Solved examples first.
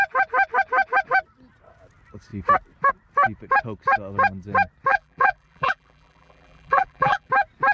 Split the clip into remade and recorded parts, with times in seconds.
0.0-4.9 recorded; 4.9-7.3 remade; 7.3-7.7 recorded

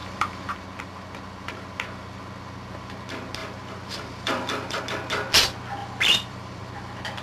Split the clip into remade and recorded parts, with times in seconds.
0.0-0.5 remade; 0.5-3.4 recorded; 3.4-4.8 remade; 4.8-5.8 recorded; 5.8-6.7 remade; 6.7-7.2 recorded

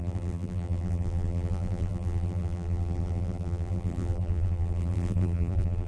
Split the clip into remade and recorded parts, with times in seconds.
0.0-5.9 remade

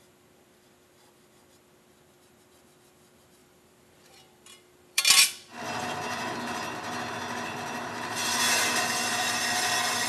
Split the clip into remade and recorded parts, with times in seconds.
0.0-3.4 recorded; 3.4-5.0 remade; 5.0-10.1 recorded

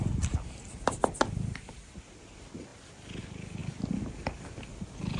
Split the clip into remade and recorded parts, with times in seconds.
0.0-5.2 recorded

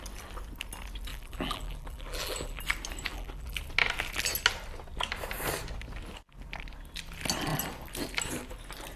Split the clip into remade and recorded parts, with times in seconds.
0.0-1.1 recorded; 1.1-2.6 remade; 2.6-3.1 recorded; 3.1-3.6 remade; 3.6-9.0 recorded